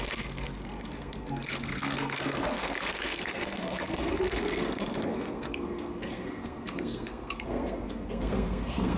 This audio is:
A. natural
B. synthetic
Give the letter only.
B